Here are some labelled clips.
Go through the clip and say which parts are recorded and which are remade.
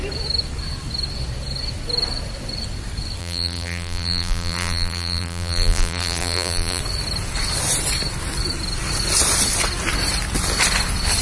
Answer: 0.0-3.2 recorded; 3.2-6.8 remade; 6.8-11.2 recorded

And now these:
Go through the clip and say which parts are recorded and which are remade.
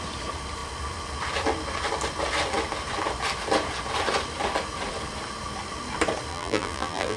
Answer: 0.0-6.3 recorded; 6.3-7.2 remade